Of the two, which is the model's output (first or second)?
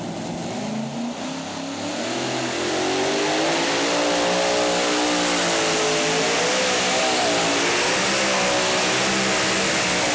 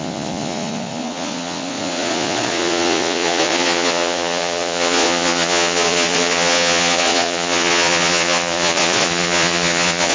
second